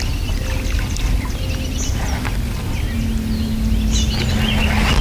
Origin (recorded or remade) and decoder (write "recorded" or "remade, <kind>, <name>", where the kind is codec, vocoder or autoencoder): recorded